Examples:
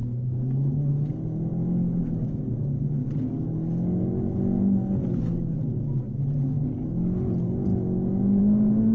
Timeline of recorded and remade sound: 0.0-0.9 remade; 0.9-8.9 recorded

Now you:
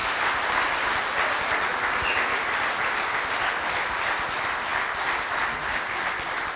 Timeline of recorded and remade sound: 0.0-6.6 recorded

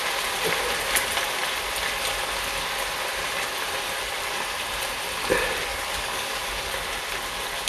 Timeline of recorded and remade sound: 0.0-5.7 recorded; 5.7-6.5 remade; 6.5-7.7 recorded